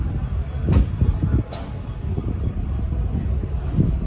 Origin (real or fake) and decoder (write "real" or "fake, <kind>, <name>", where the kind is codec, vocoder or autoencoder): real